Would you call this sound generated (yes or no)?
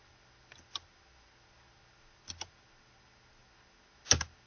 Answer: no